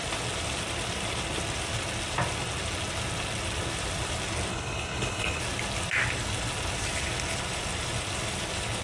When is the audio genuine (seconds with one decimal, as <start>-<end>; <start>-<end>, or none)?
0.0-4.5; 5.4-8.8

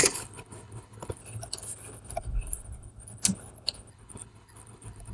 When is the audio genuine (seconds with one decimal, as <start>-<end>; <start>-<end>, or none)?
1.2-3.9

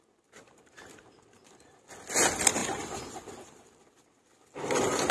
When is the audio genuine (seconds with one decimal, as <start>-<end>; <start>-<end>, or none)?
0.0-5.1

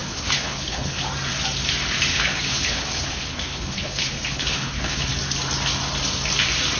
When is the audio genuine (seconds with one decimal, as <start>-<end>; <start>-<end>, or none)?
1.0-2.1; 5.1-6.8